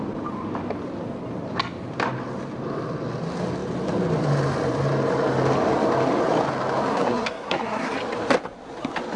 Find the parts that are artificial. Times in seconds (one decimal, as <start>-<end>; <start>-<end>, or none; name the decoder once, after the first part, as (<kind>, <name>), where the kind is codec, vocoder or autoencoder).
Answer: 6.9-7.9 (codec, SNAC)